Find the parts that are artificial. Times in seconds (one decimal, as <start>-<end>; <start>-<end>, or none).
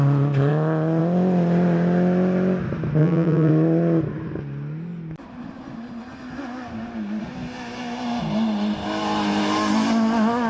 3.0-3.5